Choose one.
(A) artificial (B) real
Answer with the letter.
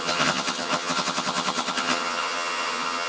A